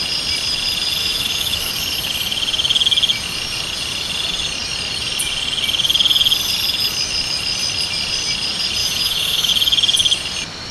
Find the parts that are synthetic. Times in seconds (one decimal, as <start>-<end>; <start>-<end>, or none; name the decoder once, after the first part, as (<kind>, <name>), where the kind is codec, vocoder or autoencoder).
1.0-1.7 (autoencoder, DAC-VAE); 8.8-9.5